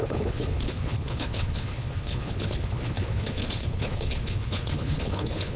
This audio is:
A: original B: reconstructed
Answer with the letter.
B